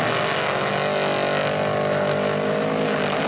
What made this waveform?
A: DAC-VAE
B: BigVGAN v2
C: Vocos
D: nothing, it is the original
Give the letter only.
D